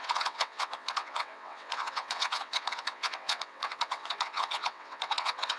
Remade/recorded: remade